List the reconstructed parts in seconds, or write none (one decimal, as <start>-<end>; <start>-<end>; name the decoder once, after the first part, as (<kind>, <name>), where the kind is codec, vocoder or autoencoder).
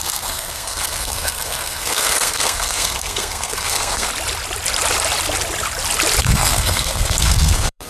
0.0-4.1 (codec, SNAC); 6.2-7.9